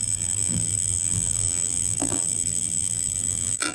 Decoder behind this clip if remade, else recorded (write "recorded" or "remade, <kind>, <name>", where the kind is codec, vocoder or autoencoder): remade, vocoder, BigVGAN v2